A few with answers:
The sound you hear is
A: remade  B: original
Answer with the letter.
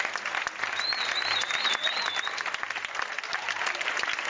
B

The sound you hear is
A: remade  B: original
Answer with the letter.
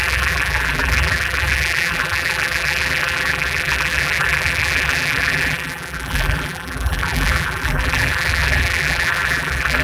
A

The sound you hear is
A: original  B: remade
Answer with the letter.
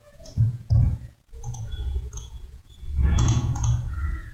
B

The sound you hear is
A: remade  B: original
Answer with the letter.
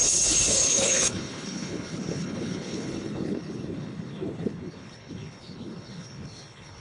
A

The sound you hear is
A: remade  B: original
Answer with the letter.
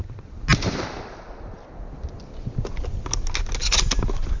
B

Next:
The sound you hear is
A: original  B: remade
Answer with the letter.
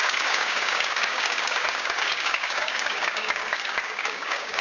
B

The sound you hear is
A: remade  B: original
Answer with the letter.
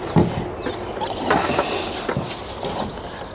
B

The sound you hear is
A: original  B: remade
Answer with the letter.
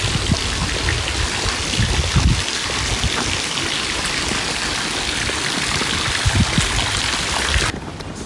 A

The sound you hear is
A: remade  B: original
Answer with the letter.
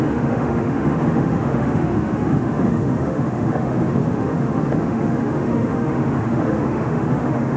A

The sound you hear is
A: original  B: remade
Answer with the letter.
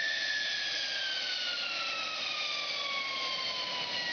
A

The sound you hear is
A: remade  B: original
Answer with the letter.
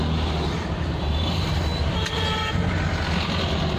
B